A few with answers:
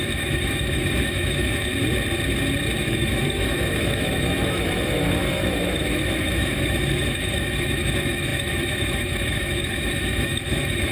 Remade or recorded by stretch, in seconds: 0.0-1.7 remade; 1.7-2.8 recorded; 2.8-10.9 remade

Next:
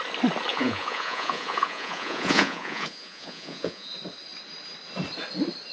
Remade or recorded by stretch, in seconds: 0.0-0.5 recorded; 0.5-3.9 remade; 3.9-5.7 recorded

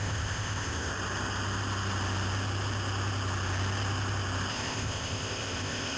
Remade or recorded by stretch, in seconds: 0.0-0.9 remade; 0.9-4.5 recorded; 4.5-6.0 remade